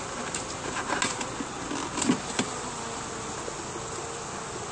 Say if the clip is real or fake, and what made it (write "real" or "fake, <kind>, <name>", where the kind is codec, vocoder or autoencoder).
real